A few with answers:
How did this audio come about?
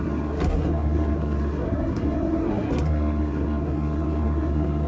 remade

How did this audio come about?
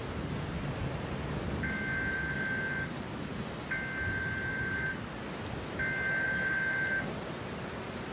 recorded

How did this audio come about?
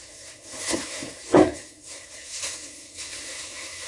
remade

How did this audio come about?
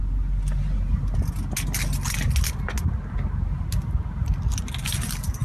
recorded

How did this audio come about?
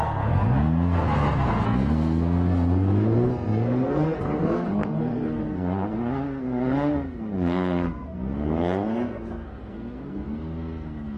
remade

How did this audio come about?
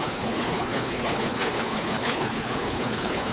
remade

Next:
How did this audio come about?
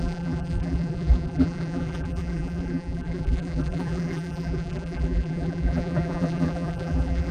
remade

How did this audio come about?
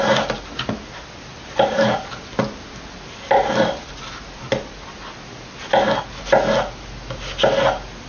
recorded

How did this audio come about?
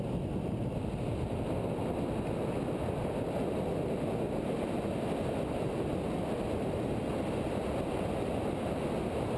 recorded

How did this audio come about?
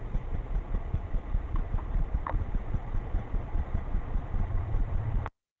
remade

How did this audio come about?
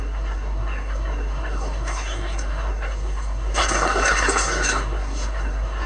remade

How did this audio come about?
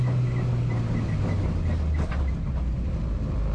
recorded